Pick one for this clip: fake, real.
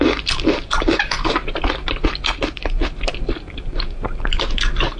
fake